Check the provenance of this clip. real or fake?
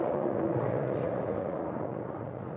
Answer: fake